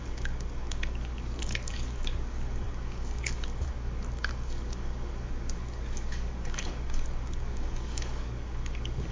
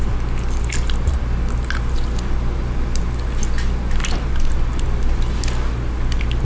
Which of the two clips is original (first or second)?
second